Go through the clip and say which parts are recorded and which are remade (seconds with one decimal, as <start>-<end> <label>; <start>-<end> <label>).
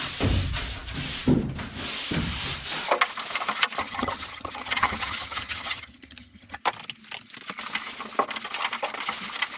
0.0-3.8 recorded; 3.8-6.6 remade; 6.6-9.6 recorded